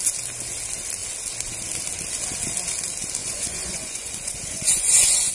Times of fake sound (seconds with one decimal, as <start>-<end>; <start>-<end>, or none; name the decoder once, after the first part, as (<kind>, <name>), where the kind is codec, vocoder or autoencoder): 3.2-5.3 (vocoder, Vocos)